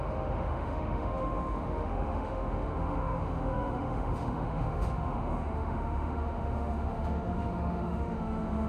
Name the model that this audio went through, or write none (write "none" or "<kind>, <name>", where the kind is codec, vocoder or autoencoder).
autoencoder, DAC-VAE